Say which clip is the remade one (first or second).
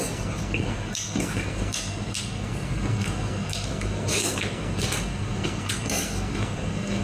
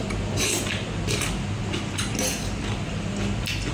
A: first